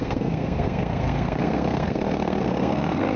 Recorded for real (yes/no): no